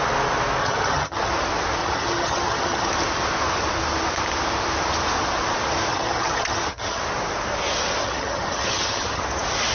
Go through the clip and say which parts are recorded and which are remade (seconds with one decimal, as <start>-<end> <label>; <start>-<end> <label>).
0.0-0.6 recorded; 0.6-1.3 remade; 1.3-1.8 recorded; 1.8-2.9 remade; 2.9-5.9 recorded; 5.9-7.0 remade; 7.0-8.0 recorded; 8.0-9.2 remade; 9.2-9.7 recorded